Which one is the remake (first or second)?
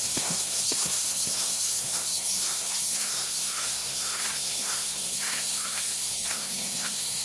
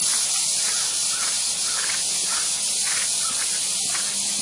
first